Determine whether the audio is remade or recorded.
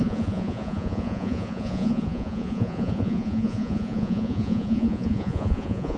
remade